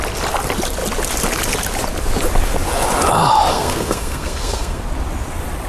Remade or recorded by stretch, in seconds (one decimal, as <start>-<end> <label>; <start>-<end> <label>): 0.0-3.5 recorded; 3.5-4.8 remade; 4.8-5.7 recorded